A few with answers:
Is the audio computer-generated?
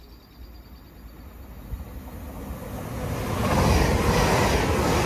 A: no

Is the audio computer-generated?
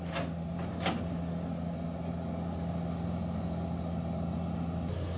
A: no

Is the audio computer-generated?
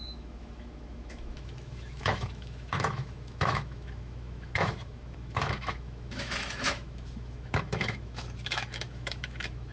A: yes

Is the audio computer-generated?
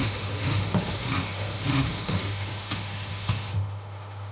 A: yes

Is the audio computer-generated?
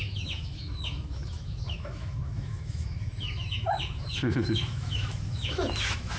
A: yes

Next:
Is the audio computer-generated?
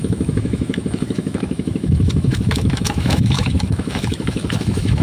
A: yes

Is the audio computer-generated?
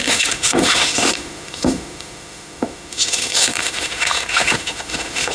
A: yes